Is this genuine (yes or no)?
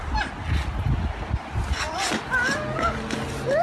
yes